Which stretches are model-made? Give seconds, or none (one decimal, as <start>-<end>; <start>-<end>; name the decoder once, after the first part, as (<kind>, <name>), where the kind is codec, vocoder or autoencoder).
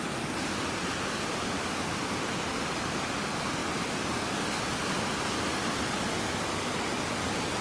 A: none